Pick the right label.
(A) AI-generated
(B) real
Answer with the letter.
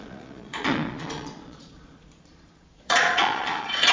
A